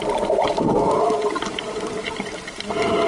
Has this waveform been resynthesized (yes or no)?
no